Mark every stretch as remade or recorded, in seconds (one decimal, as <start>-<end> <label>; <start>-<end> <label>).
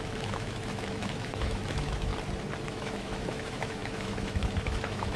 0.0-2.1 remade; 2.1-2.7 recorded; 2.7-5.2 remade